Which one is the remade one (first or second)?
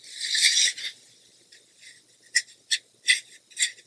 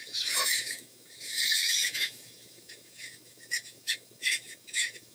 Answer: second